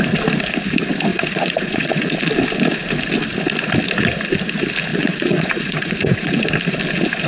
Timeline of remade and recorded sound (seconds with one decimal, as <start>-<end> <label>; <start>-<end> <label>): 0.0-1.1 recorded; 1.1-2.1 remade; 2.1-4.9 recorded; 4.9-6.3 remade; 6.3-7.3 recorded